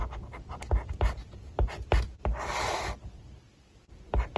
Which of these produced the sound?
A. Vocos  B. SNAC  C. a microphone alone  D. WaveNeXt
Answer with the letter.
C